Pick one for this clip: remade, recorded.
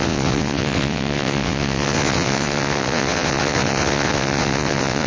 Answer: remade